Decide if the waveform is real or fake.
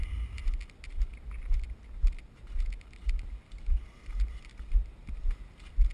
real